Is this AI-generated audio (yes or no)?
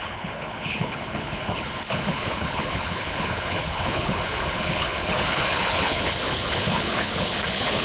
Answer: yes